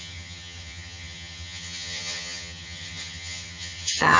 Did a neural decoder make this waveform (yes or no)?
yes